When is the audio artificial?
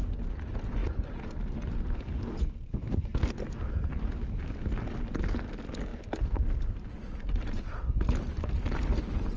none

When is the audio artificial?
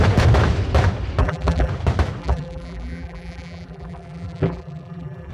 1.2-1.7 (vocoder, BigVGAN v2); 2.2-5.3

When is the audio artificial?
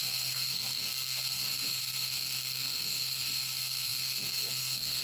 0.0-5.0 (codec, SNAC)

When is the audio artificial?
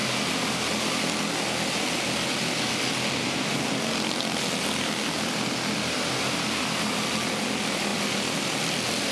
none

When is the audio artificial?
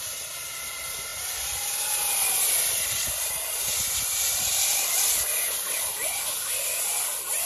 none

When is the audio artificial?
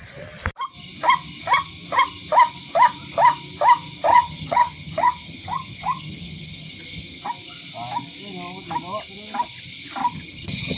4.1-7.2 (vocoder, HiFi-GAN); 10.0-10.8